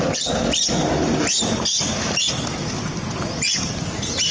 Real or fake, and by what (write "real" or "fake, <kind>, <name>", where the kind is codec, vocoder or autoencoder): real